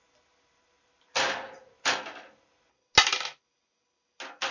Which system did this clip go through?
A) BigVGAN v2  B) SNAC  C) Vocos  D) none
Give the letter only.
D